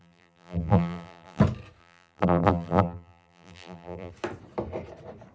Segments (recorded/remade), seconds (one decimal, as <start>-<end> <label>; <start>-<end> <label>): 0.0-1.4 remade; 1.4-1.8 recorded; 1.8-4.1 remade; 4.1-5.3 recorded